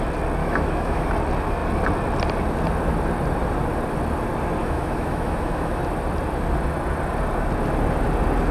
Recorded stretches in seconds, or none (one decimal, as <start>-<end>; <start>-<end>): 0.0-0.4; 1.1-4.6; 5.8-8.5